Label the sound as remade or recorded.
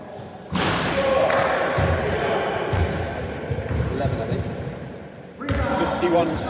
remade